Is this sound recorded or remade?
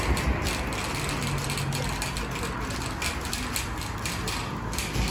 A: recorded